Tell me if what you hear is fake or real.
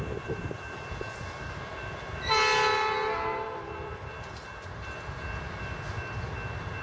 real